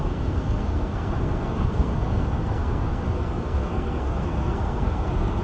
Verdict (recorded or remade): remade